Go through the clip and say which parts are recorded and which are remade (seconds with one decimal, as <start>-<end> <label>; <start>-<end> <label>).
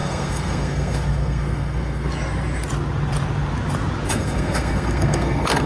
0.0-2.1 remade; 2.1-4.1 recorded; 4.1-5.7 remade